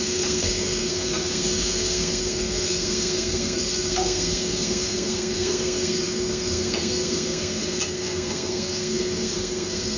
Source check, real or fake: fake